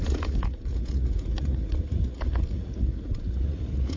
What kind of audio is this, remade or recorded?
remade